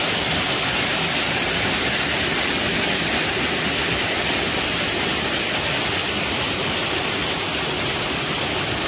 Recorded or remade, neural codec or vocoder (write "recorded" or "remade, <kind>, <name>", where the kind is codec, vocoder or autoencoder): recorded